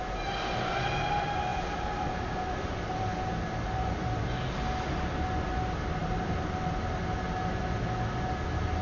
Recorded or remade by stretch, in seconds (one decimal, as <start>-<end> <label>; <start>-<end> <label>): 0.0-1.5 recorded; 1.5-4.1 remade; 4.1-6.0 recorded; 6.0-6.7 remade; 6.7-8.8 recorded